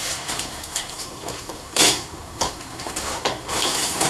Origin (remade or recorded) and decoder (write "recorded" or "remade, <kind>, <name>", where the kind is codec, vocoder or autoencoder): remade, codec, SNAC